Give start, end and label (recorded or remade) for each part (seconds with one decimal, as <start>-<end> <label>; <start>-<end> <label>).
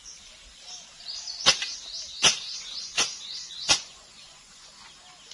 0.0-2.2 recorded; 2.2-4.7 remade; 4.7-5.3 recorded